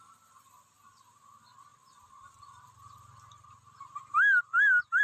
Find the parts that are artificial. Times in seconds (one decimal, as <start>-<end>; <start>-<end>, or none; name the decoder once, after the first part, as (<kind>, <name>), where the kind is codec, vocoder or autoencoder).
none